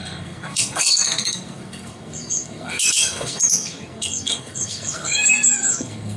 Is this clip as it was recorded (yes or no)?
no